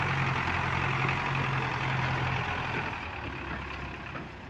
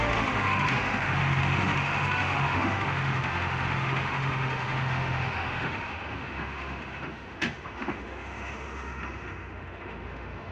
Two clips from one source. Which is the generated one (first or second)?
second